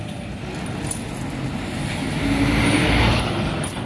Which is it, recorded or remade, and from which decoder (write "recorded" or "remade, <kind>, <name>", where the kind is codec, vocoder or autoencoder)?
recorded